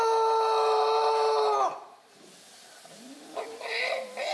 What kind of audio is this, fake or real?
real